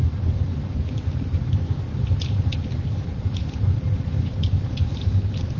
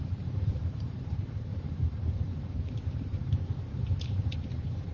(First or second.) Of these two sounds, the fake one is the second